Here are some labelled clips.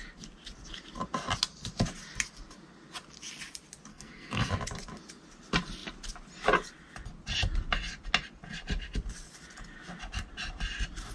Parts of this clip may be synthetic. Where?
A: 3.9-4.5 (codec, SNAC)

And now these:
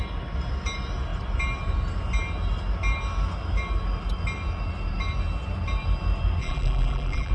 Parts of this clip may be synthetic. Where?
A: 6.4-7.3 (vocoder, BigVGAN v2)

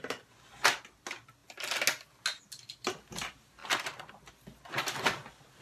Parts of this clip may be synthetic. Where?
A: none

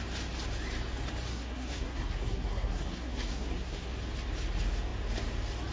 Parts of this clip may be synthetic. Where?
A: 1.3-3.9 (codec, SNAC)